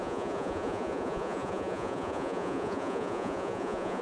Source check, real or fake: fake